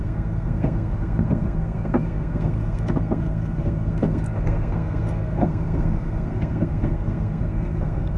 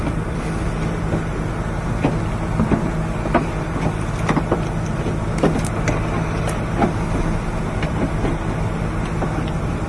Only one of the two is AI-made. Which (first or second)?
first